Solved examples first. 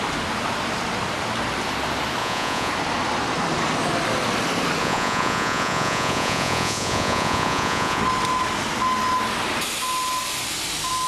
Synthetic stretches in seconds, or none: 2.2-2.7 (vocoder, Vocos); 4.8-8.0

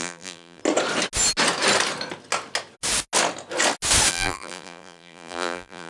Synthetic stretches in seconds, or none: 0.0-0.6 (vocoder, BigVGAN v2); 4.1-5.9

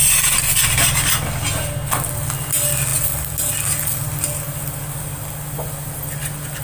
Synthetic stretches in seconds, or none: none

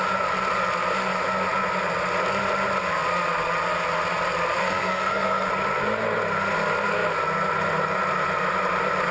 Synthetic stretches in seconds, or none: 4.6-5.5 (codec, SNAC)

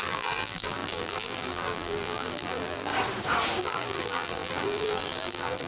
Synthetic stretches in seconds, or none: 0.0-2.9 (vocoder, BigVGAN v2); 3.6-5.7

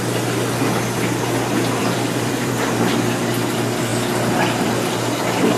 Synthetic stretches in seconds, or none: 1.8-2.5 (vocoder, BigVGAN v2)

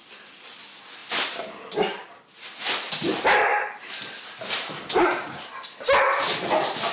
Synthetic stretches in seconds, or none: none

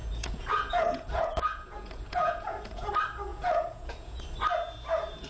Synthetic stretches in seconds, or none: 0.0-2.9 (vocoder, Vocos); 3.3-4.2